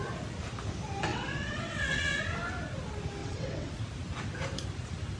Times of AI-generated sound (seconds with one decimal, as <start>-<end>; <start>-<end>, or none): 1.1-2.2; 3.2-3.7